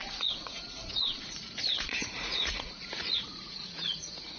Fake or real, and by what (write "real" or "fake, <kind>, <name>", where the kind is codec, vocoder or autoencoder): fake, vocoder, Vocos